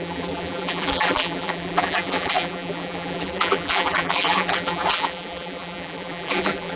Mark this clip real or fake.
fake